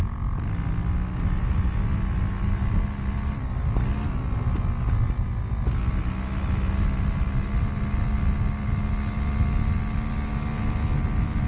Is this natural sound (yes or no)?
yes